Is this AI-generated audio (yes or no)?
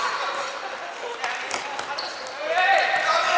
no